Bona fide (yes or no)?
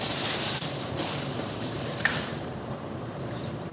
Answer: no